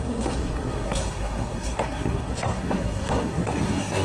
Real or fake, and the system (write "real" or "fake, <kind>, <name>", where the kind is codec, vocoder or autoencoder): fake, codec, SNAC